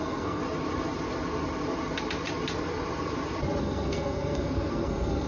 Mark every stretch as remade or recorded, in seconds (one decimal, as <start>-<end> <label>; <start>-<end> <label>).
0.0-0.4 remade; 0.4-3.6 recorded; 3.6-5.3 remade